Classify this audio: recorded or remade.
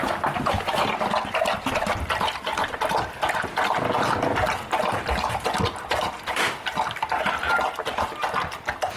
recorded